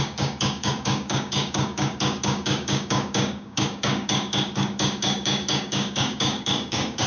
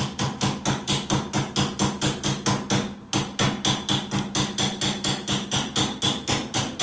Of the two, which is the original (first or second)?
second